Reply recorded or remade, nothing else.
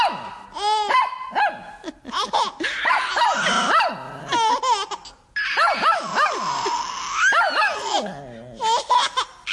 recorded